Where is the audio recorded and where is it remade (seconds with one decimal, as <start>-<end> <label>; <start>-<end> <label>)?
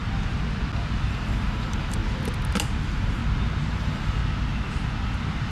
0.0-1.1 recorded; 1.1-2.0 remade; 2.0-2.8 recorded; 2.8-3.2 remade; 3.2-3.7 recorded; 3.7-4.2 remade; 4.2-5.5 recorded